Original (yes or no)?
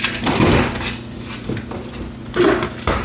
yes